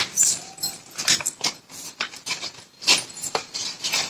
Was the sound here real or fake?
real